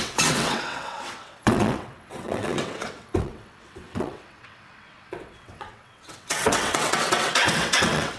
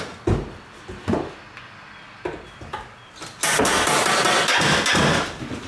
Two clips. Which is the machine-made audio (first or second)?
first